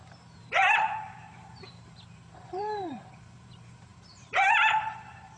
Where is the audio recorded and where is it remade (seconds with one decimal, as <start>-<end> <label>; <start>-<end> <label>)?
0.0-5.4 remade